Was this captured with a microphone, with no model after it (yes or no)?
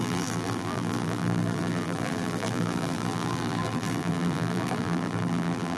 no